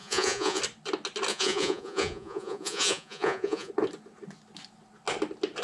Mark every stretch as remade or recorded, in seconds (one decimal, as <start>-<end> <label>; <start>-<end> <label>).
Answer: 0.0-0.6 remade; 0.6-1.3 recorded; 1.3-3.7 remade; 3.7-5.6 recorded